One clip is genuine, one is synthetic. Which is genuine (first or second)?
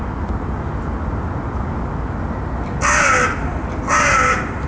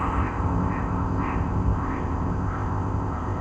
first